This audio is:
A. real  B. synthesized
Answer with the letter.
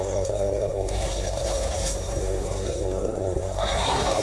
B